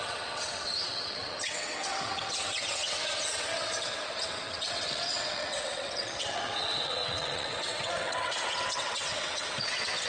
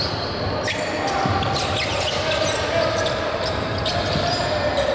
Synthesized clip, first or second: first